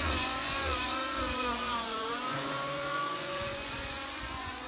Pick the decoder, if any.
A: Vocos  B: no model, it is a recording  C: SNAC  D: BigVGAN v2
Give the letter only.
A